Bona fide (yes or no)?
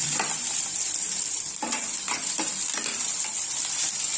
no